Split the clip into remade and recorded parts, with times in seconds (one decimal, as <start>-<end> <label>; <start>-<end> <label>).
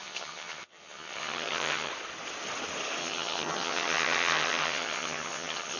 0.0-1.9 remade; 1.9-3.0 recorded; 3.0-5.8 remade